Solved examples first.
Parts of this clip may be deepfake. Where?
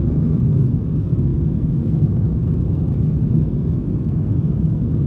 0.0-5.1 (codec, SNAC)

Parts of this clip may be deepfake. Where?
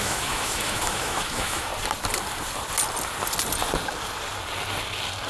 0.0-1.7 (autoencoder, DAC-VAE)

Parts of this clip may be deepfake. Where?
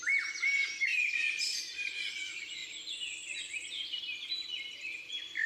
0.9-1.6 (vocoder, BigVGAN v2); 2.6-5.5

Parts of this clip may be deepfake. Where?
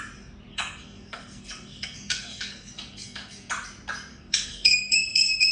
0.5-3.5 (codec, SNAC); 4.1-5.5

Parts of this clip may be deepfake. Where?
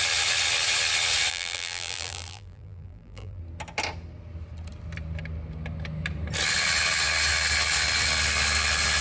1.3-3.4 (vocoder, BigVGAN v2)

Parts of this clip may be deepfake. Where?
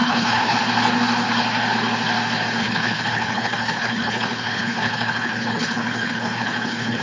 0.0-0.6 (codec, HILCodec); 2.6-7.0